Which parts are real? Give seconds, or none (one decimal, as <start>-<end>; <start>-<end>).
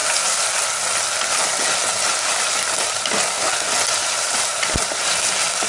0.0-4.0; 5.3-5.7